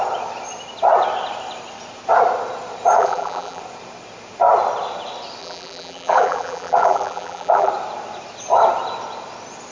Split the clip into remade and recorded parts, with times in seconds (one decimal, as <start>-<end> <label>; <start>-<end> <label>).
0.0-3.0 recorded; 3.0-3.6 remade; 3.6-5.4 recorded; 5.4-7.7 remade; 7.7-9.7 recorded